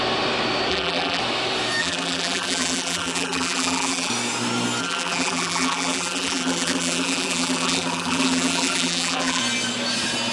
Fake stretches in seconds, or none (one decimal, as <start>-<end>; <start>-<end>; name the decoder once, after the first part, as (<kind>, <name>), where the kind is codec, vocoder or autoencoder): 0.7-1.2 (vocoder, BigVGAN v2); 1.8-4.1; 4.8-9.4